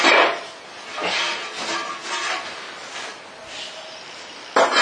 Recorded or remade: recorded